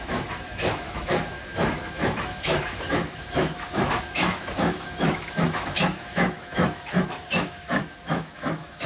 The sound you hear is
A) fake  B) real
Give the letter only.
A